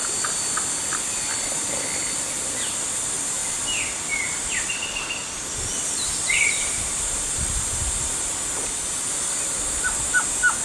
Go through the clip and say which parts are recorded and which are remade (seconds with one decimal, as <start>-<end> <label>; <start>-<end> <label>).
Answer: 0.0-10.6 recorded